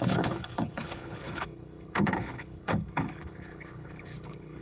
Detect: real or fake fake